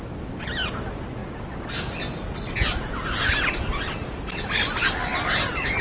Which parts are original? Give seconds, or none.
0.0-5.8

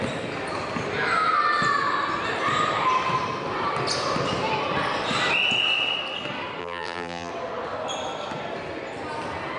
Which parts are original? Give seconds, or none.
0.0-6.6; 7.3-9.6

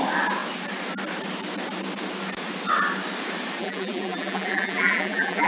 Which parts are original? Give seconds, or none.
0.0-3.6

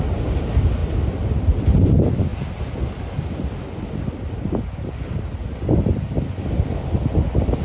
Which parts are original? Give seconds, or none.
0.0-7.6

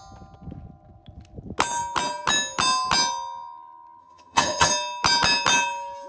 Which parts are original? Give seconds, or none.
0.0-4.0; 4.7-6.1

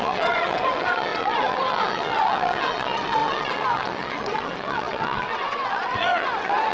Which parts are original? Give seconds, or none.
none